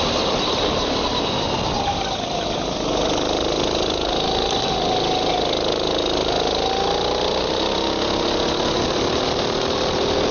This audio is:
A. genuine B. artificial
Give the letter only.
A